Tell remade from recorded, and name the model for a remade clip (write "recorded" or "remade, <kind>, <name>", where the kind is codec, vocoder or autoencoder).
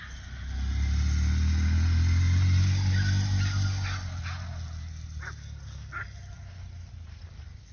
recorded